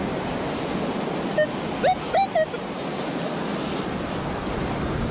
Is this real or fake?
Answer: real